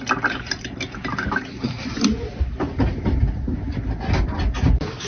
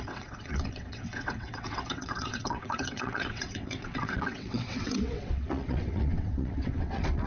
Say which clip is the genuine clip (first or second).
first